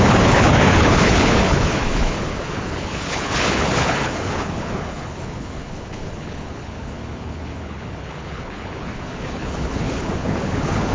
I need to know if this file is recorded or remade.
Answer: remade